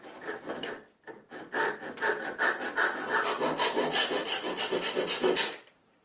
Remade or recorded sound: recorded